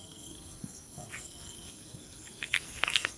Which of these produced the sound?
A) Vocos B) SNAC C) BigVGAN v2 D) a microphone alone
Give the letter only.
B